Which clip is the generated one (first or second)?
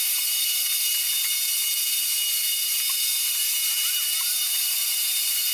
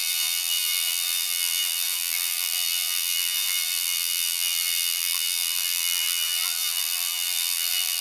second